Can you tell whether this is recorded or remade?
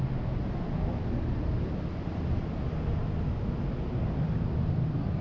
recorded